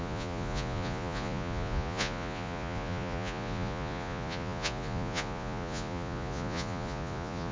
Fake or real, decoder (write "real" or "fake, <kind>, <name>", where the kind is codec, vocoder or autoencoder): fake, vocoder, Vocos